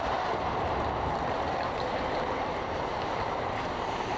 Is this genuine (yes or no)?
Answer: yes